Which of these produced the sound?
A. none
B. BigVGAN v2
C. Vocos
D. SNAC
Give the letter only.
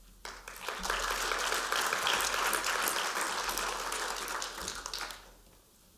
A